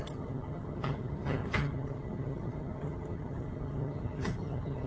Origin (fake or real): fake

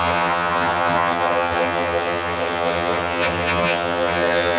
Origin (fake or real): fake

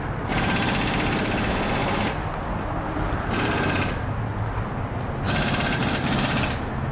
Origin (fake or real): real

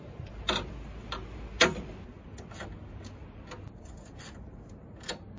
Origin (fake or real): real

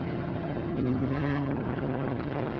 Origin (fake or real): fake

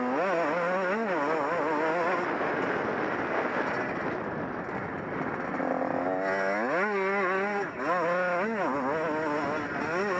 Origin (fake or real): real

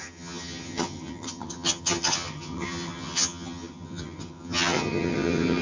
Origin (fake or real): fake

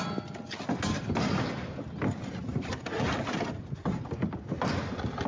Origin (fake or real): real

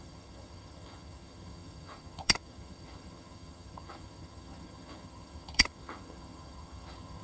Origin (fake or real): fake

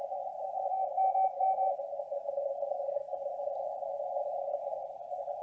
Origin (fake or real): real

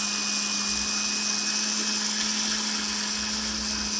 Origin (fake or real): real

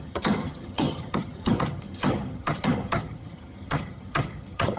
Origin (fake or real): fake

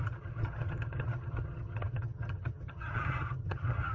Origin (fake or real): fake